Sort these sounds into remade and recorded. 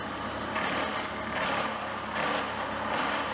recorded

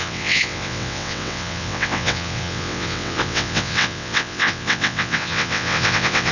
remade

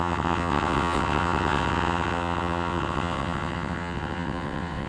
remade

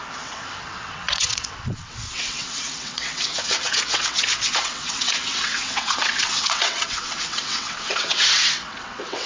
remade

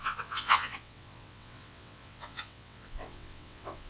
remade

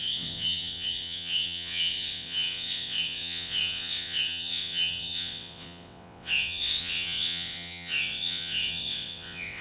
remade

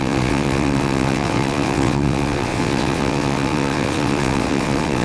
remade